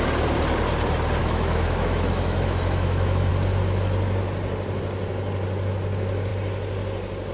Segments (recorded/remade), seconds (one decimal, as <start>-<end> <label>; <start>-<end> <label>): 0.0-1.2 recorded; 1.2-3.3 remade; 3.3-7.3 recorded